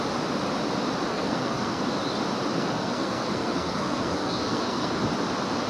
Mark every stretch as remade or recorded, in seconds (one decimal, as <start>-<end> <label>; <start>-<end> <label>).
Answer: 0.0-1.1 recorded; 1.1-1.8 remade; 1.8-2.5 recorded; 2.5-5.0 remade; 5.0-5.7 recorded